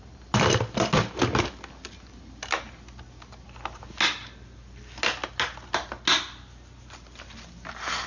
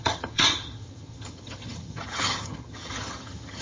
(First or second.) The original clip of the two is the first